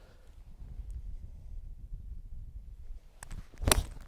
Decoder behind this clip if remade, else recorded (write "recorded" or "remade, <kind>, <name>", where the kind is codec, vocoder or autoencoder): recorded